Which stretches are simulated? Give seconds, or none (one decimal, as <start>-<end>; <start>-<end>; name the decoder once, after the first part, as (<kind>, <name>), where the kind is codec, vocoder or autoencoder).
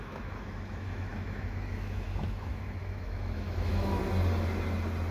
0.0-4.0 (autoencoder, DAC-VAE)